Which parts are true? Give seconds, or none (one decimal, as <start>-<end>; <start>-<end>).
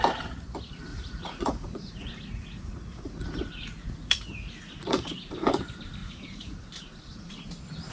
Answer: 0.0-0.9; 5.6-6.0; 7.3-7.9